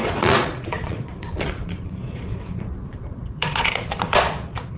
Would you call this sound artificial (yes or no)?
yes